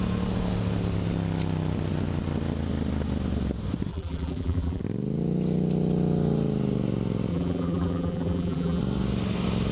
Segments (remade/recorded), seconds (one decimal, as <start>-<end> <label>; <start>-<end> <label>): 0.0-3.9 recorded; 3.9-4.8 remade; 4.8-7.3 recorded; 7.3-8.8 remade; 8.8-9.7 recorded